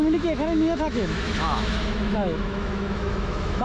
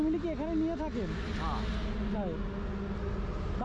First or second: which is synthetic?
first